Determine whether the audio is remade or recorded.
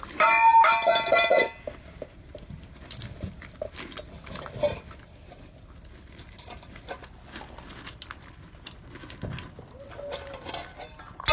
recorded